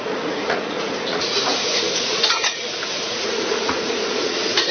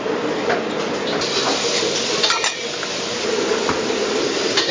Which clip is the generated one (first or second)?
first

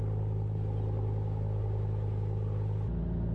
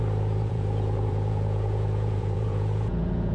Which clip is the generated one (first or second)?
second